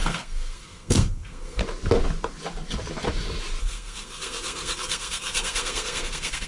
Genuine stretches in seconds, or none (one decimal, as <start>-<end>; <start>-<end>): 1.6-3.6